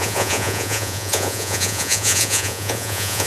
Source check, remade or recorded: remade